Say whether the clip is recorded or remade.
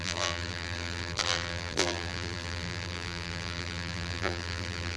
remade